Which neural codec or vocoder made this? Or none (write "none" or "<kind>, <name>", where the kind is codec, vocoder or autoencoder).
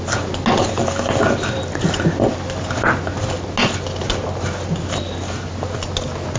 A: none